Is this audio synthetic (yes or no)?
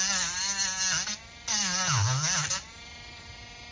no